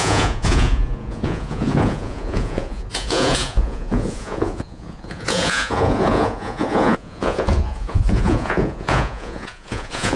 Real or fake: fake